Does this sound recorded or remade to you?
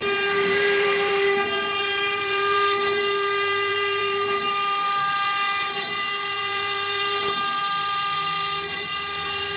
remade